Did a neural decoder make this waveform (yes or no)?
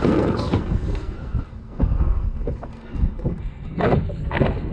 yes